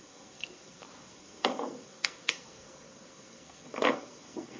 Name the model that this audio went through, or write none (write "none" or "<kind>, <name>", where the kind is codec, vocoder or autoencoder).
codec, SNAC